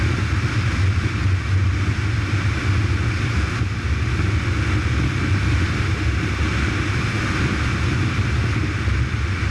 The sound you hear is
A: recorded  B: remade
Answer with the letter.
A